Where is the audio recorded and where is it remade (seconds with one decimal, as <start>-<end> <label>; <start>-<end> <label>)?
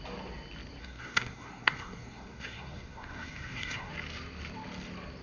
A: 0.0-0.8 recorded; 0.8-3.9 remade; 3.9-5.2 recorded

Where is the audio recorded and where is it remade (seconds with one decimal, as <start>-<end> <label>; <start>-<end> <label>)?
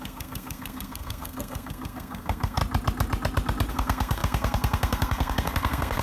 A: 0.0-2.6 remade; 2.6-3.7 recorded; 3.7-6.0 remade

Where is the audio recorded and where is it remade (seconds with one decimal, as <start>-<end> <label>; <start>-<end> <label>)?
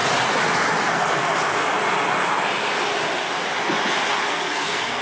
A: 0.0-0.8 recorded; 0.8-1.3 remade; 1.3-4.3 recorded; 4.3-5.0 remade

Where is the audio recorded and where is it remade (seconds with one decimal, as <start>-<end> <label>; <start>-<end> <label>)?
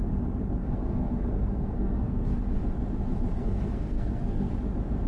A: 0.0-0.6 recorded; 0.6-2.4 remade; 2.4-3.3 recorded; 3.3-4.5 remade; 4.5-5.1 recorded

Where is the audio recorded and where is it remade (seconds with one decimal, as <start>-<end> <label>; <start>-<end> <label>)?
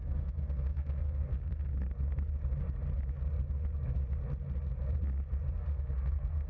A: 0.0-1.7 remade; 1.7-5.6 recorded; 5.6-6.5 remade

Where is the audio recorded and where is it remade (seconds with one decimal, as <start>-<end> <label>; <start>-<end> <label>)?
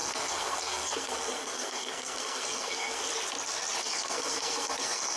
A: 0.0-3.0 remade; 3.0-3.8 recorded; 3.8-5.2 remade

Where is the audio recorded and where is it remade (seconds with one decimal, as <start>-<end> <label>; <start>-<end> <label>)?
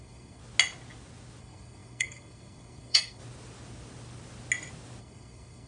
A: 0.0-0.4 remade; 0.4-1.4 recorded; 1.4-3.2 remade; 3.2-5.0 recorded; 5.0-5.7 remade